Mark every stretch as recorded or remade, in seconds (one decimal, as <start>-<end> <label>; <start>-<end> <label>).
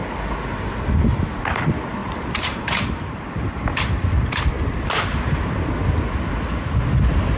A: 0.0-2.0 recorded; 2.0-5.4 remade; 5.4-7.4 recorded